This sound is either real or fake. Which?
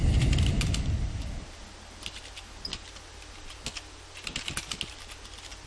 real